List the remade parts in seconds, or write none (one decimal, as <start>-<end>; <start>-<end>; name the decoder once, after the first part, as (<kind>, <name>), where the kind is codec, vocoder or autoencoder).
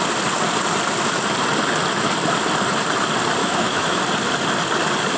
3.4-4.0 (autoencoder, DAC-VAE)